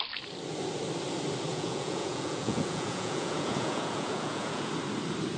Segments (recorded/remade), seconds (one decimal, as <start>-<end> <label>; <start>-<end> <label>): 0.0-1.5 recorded; 1.5-4.7 remade; 4.7-5.4 recorded